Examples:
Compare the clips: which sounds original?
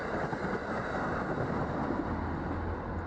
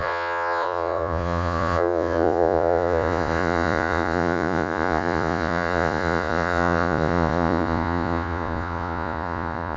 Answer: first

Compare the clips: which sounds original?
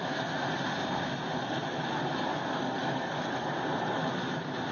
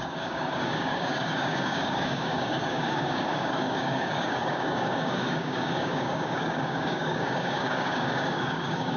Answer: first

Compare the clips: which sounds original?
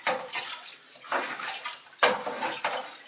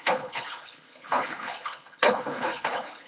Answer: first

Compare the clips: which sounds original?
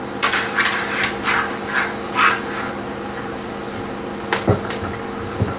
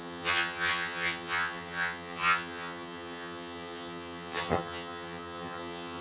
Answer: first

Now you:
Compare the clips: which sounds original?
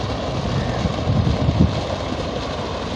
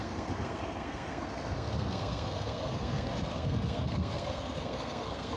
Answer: first